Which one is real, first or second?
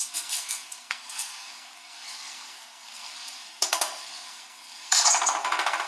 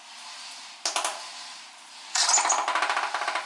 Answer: second